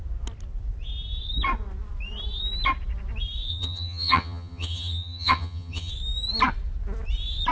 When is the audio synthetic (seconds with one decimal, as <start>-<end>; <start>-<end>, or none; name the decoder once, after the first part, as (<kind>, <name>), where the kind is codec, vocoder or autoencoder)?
3.5-5.9 (vocoder, HiFi-GAN)